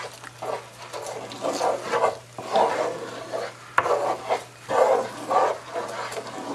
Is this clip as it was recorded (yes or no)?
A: yes